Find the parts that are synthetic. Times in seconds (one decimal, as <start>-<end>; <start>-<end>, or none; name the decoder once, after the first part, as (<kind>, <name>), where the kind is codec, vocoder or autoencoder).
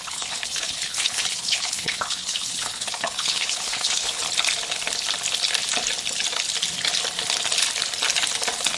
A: 0.0-4.2 (codec, HILCodec)